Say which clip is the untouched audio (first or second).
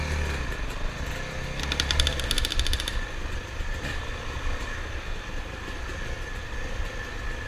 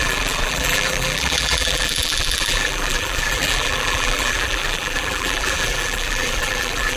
first